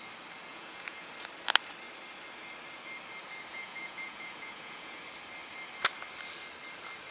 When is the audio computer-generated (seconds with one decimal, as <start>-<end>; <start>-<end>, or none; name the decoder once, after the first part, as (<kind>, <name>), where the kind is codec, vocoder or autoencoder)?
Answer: 0.5-1.1 (vocoder, Vocos); 3.5-5.0